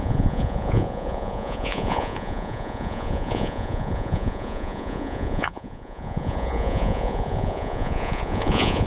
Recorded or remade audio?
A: remade